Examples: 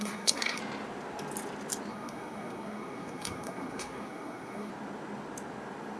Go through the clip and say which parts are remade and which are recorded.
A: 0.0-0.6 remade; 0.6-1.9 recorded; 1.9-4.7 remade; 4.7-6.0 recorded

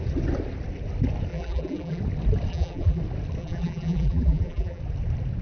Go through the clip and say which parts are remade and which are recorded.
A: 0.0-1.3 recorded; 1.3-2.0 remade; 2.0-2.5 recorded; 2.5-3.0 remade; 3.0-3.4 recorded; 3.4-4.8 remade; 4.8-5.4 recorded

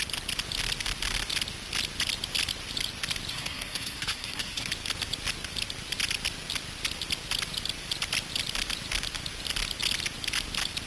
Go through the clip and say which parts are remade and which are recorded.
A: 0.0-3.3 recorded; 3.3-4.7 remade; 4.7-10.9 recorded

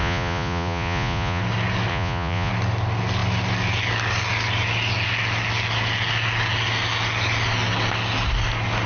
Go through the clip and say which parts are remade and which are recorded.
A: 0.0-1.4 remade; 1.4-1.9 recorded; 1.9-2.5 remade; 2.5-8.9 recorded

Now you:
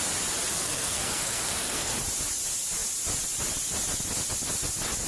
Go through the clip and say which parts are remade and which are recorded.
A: 0.0-0.5 recorded; 0.5-1.9 remade; 1.9-5.1 recorded